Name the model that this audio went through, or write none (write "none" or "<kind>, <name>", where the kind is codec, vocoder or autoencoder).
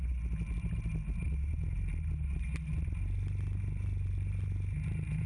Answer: none